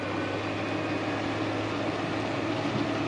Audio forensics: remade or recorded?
recorded